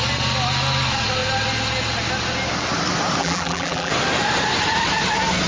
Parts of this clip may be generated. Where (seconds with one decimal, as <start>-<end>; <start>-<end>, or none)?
3.2-3.9